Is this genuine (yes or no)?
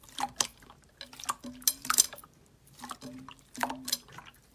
yes